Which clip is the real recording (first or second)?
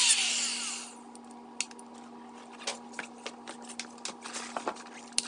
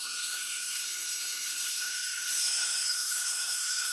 first